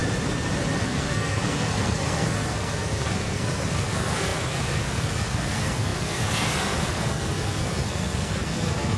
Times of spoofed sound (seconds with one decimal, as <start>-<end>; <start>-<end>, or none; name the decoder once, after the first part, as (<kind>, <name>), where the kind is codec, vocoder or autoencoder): 0.8-9.0 (codec, SNAC)